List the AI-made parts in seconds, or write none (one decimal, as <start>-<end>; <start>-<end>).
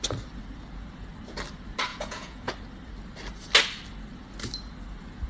1.9-2.5